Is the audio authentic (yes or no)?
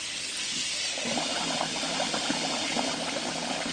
yes